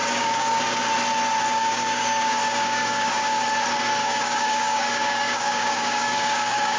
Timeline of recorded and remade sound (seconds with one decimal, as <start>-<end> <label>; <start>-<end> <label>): 0.0-0.6 remade; 0.6-1.6 recorded; 1.6-3.4 remade; 3.4-4.0 recorded; 4.0-6.8 remade